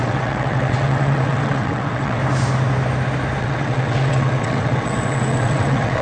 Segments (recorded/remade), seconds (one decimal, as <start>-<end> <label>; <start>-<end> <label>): 0.0-2.2 remade; 2.2-3.4 recorded; 3.4-6.0 remade